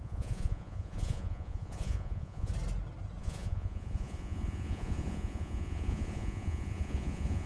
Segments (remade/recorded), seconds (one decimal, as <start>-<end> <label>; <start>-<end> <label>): 0.0-2.5 remade; 2.5-3.2 recorded; 3.2-7.5 remade